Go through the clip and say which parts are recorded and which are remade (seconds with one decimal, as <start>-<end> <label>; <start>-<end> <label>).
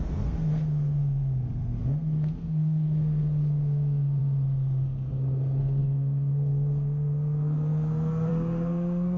0.0-9.2 remade